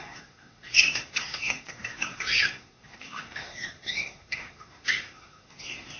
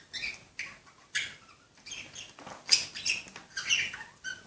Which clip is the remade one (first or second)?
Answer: first